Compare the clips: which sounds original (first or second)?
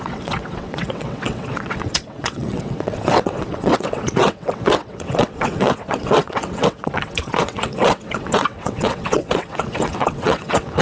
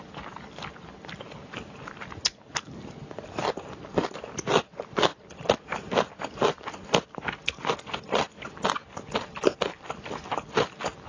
second